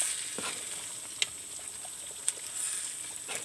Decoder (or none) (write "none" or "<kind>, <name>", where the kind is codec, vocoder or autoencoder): none